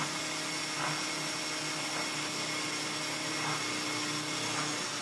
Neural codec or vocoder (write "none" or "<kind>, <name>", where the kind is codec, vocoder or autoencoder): none